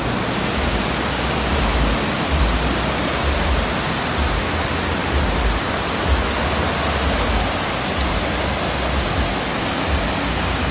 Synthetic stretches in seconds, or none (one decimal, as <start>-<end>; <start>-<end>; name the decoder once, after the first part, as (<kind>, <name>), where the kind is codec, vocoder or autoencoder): none

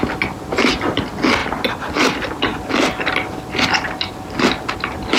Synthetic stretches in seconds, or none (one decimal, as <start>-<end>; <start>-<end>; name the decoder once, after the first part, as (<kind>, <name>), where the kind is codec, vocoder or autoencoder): none